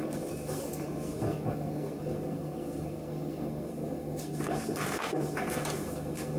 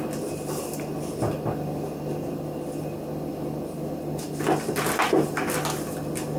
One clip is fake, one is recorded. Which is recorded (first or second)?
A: second